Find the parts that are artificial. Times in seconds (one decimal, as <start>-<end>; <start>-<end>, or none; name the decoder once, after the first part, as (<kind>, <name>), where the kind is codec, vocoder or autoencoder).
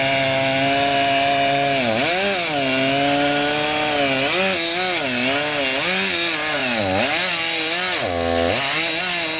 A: none